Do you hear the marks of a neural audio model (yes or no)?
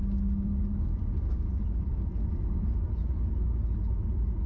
no